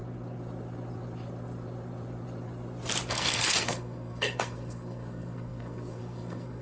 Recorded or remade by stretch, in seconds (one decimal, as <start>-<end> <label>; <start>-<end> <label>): 0.0-3.1 recorded; 3.1-6.6 remade